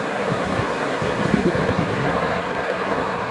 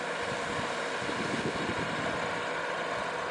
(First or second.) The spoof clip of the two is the first